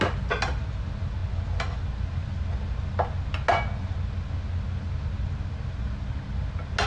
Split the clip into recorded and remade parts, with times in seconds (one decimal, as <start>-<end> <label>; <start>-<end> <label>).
0.0-6.9 recorded

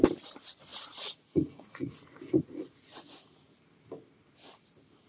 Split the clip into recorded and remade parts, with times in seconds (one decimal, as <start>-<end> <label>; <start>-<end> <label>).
0.0-0.7 recorded; 0.7-3.5 remade; 3.5-5.1 recorded

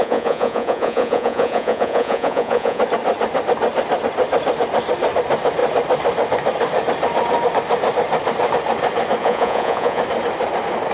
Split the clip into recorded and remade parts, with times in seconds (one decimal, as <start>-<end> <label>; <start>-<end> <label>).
0.0-2.8 remade; 2.8-9.2 recorded; 9.2-10.0 remade; 10.0-10.9 recorded

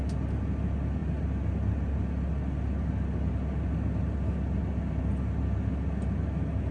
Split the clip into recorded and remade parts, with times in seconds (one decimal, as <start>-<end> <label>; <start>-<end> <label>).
0.0-6.7 recorded

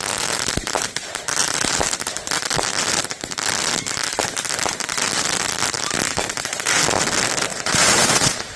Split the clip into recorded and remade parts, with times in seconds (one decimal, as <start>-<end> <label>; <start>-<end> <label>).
0.0-7.5 recorded; 7.5-8.6 remade